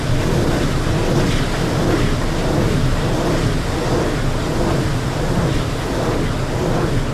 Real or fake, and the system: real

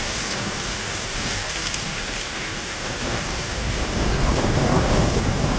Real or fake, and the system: fake, codec, DAC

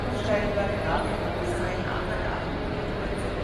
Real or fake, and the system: real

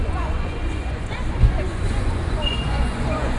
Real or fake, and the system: fake, vocoder, Vocos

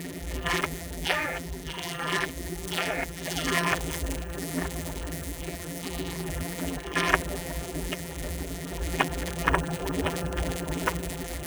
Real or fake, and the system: fake, vocoder, BigVGAN v2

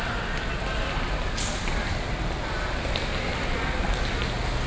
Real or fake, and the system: real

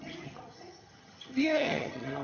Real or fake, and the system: fake, vocoder, HiFi-GAN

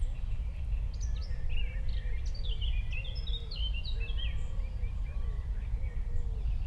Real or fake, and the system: real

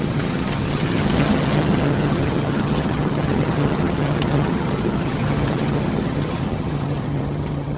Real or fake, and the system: fake, vocoder, HiFi-GAN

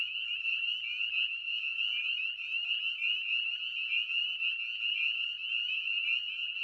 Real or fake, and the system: fake, vocoder, Vocos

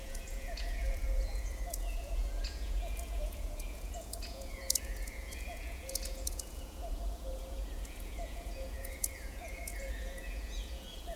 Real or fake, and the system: fake, vocoder, Vocos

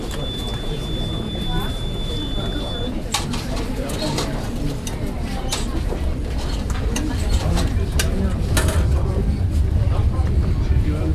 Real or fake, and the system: fake, vocoder, BigVGAN v2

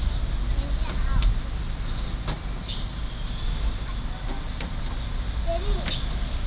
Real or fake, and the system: real